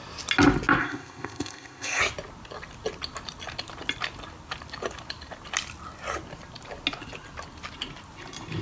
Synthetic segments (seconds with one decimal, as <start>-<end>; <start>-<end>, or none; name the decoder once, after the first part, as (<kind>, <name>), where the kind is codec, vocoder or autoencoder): 0.8-2.0 (codec, ZipCodec)